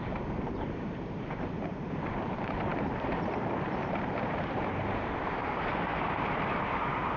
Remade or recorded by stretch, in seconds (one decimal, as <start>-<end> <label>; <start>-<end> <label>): 0.0-7.2 remade